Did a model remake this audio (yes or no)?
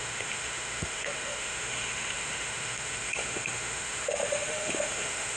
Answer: yes